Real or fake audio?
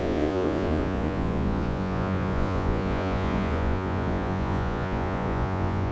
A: fake